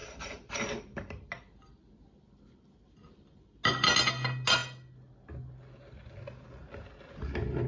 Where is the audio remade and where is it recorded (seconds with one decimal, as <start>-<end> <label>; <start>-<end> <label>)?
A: 0.0-0.5 remade; 0.5-7.7 recorded